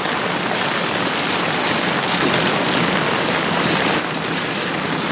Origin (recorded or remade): recorded